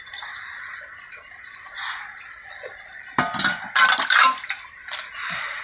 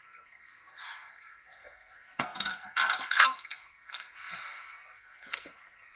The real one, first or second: first